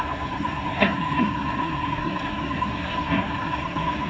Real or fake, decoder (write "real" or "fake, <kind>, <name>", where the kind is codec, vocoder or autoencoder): fake, codec, SNAC